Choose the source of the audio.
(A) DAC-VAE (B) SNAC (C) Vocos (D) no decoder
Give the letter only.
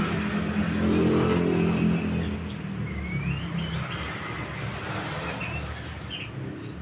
D